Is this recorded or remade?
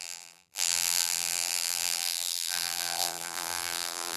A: remade